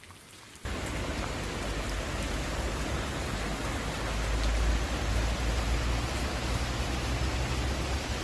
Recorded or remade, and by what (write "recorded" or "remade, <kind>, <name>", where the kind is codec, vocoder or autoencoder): recorded